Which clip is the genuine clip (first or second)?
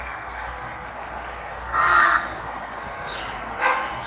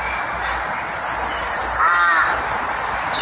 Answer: second